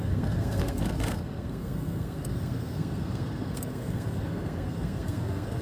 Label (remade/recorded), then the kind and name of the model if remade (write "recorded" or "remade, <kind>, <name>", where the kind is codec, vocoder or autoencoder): remade, codec, SNAC